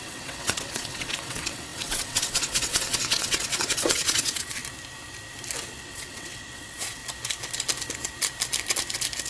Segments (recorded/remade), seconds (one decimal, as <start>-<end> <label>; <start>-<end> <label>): 0.0-4.6 remade; 4.6-5.8 recorded; 5.8-7.0 remade; 7.0-9.3 recorded